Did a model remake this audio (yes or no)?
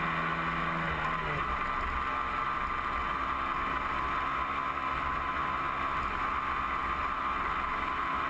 no